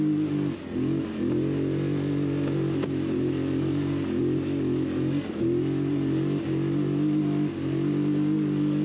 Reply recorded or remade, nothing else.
recorded